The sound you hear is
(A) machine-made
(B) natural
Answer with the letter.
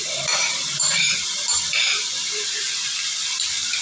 A